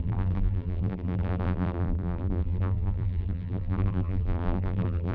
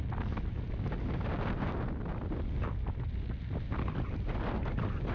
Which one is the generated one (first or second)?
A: first